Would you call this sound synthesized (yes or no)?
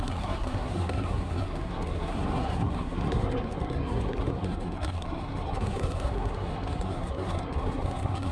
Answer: yes